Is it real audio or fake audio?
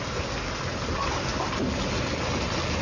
real